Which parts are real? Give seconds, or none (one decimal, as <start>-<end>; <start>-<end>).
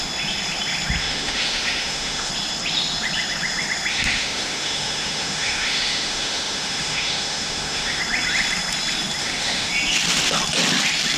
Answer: 0.0-1.0; 2.3-3.9; 8.0-9.2; 9.7-11.2